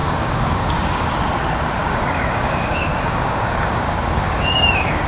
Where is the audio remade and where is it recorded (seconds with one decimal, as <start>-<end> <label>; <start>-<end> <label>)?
0.0-1.1 remade; 1.1-1.8 recorded; 1.8-5.1 remade